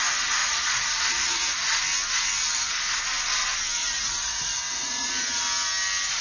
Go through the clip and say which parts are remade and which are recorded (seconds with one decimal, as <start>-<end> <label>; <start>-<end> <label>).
0.0-0.4 recorded; 0.4-1.0 remade; 1.0-3.8 recorded; 3.8-5.1 remade; 5.1-6.2 recorded